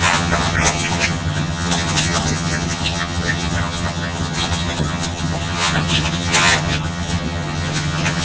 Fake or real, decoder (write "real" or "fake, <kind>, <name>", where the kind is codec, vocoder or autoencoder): fake, vocoder, HiFi-GAN